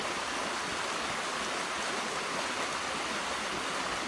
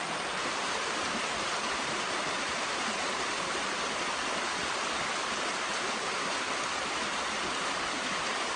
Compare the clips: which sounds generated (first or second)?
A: second